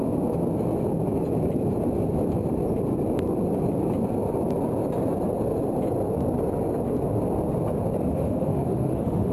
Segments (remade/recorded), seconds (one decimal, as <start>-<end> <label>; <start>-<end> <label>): 0.0-8.1 recorded; 8.1-9.3 remade